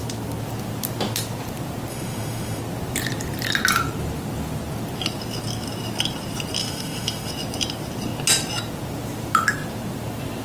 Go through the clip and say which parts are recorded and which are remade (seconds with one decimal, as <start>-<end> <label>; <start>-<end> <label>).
0.0-1.9 recorded; 1.9-2.6 remade; 2.6-6.6 recorded; 6.6-7.3 remade; 7.3-10.4 recorded